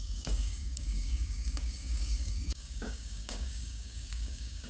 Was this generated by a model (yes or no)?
yes